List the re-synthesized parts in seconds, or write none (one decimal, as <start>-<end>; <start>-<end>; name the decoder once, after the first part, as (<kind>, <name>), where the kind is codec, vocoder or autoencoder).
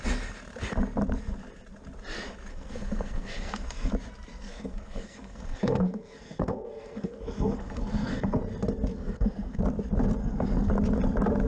2.5-3.9 (codec, SNAC); 4.3-8.4; 8.9-9.6; 10.2-10.7